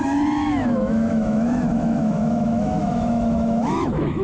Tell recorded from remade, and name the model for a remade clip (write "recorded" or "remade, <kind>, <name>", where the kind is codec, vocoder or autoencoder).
remade, autoencoder, DAC-VAE